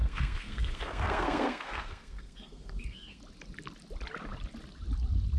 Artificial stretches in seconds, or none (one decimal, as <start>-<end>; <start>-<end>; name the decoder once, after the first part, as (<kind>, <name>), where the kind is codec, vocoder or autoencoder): 0.0-3.2 (codec, SNAC)